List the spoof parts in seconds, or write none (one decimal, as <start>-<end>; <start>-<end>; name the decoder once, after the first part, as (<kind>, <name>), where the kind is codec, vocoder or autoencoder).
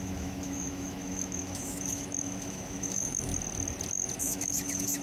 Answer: 0.0-3.3 (autoencoder, DAC-VAE); 4.2-5.0